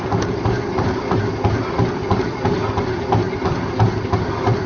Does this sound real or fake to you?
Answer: real